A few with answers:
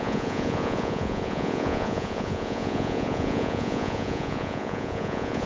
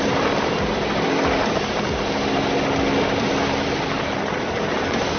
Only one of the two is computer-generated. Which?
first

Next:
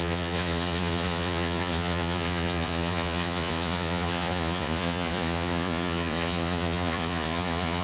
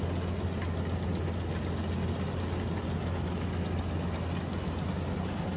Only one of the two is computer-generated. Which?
first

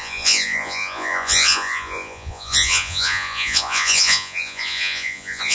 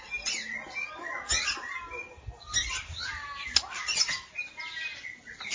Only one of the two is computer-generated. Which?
first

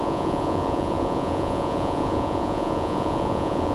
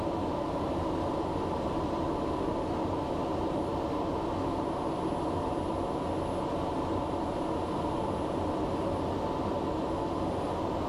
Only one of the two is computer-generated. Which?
first